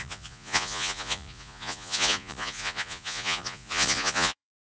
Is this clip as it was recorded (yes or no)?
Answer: no